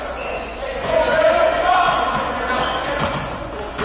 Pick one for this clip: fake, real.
fake